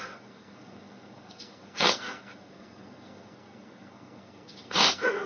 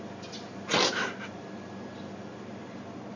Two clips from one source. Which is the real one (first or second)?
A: second